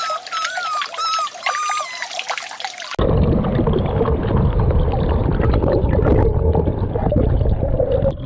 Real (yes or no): yes